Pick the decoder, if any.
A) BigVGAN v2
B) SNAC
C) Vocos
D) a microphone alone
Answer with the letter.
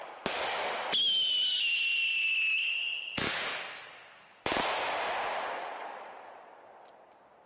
D